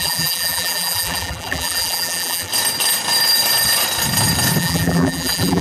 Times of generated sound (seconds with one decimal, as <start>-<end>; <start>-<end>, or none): 0.0-2.5; 4.6-5.6